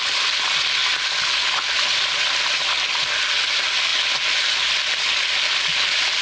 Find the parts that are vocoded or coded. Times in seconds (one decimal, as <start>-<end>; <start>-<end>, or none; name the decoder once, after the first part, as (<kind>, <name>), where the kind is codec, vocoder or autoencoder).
none